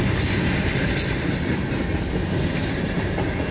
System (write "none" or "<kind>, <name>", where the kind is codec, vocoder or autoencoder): none